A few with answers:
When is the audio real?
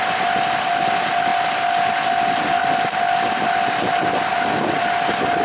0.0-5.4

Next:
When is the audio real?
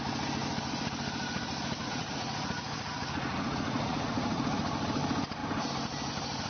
0.0-1.8; 4.6-6.5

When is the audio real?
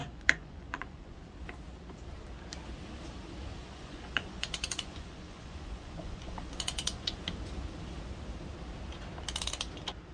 1.2-3.6; 7.2-10.1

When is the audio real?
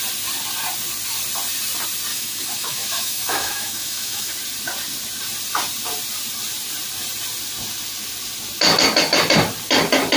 0.0-2.1; 4.3-10.2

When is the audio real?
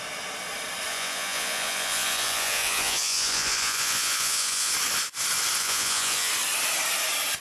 0.0-0.9; 4.7-5.6; 6.3-7.4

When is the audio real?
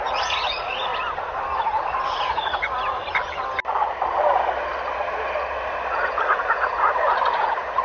0.9-1.8; 3.0-5.9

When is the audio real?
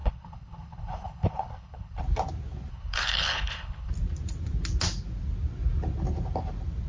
2.0-2.7; 3.9-6.9